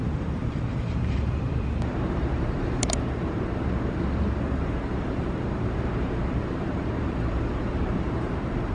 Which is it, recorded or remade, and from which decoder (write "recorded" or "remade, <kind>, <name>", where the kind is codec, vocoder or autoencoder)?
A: remade, vocoder, BigVGAN v2